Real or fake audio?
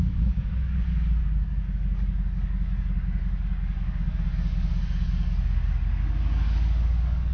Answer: fake